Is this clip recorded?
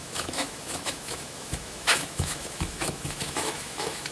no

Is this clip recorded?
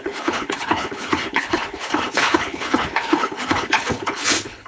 no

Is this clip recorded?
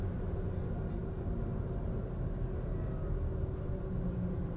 yes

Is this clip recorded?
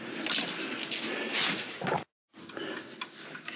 yes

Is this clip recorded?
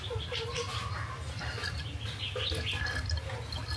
yes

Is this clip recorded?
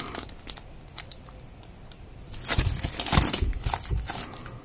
yes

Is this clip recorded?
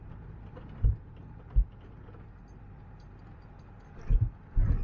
yes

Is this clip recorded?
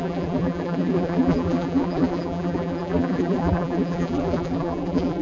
no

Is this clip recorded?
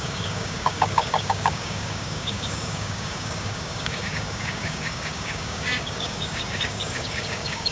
no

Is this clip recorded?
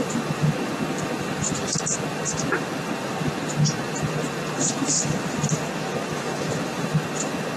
yes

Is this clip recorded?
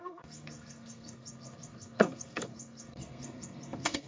no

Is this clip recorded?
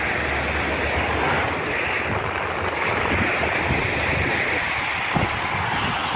yes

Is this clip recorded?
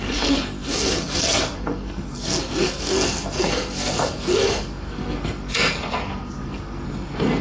no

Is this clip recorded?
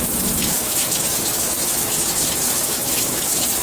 no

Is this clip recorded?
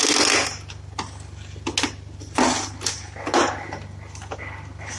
yes